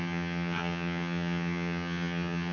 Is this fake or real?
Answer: fake